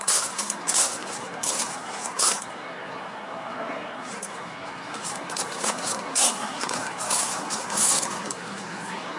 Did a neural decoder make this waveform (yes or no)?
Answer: yes